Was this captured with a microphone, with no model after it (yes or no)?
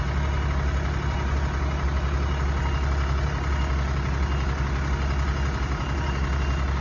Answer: yes